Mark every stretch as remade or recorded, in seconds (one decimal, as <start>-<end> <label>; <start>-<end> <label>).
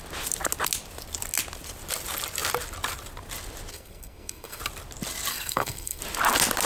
0.0-3.7 recorded; 3.7-4.6 remade; 4.6-5.3 recorded; 5.3-6.0 remade; 6.0-6.6 recorded